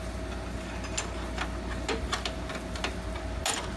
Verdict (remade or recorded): recorded